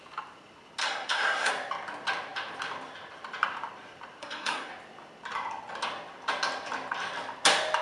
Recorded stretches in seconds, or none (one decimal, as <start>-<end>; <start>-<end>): 0.0-0.8; 1.5-4.2; 4.7-7.8